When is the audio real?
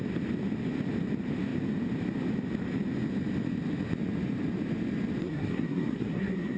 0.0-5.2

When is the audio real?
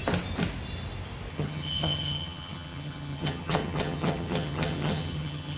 0.0-1.3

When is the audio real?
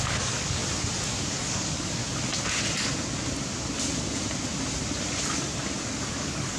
0.6-1.2; 2.0-6.0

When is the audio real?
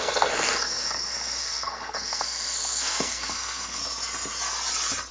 3.8-5.1